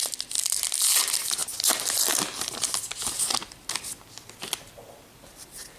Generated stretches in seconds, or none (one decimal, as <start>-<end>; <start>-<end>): none